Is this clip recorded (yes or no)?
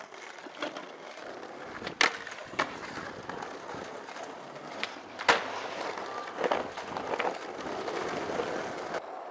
yes